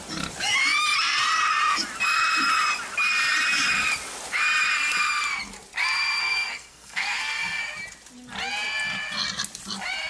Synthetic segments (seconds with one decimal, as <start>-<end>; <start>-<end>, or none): 6.2-7.6